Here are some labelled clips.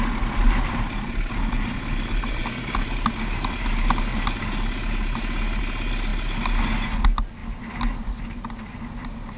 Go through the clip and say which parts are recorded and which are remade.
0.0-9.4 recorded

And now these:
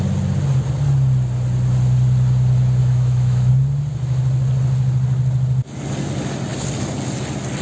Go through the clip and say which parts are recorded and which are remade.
0.0-2.8 recorded; 2.8-3.5 remade; 3.5-7.6 recorded